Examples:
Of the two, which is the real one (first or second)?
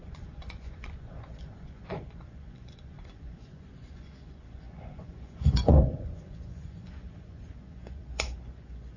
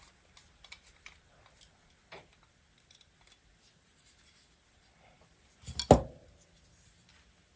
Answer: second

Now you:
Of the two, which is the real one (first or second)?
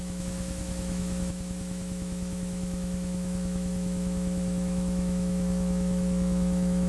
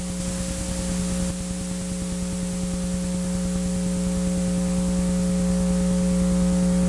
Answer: second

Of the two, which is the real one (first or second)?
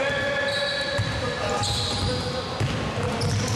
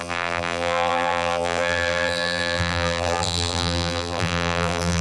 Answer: first